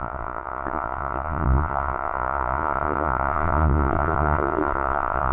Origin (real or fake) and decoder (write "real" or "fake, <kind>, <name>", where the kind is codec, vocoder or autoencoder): fake, vocoder, Vocos